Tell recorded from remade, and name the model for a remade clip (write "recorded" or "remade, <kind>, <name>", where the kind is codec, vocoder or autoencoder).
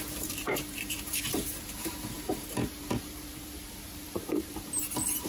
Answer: remade, vocoder, BigVGAN v2